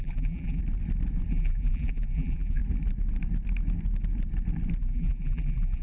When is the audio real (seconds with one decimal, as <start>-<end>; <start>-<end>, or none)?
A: 0.6-1.3; 2.6-4.8